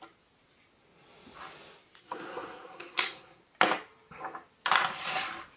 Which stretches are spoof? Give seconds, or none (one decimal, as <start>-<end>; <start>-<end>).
2.0-3.4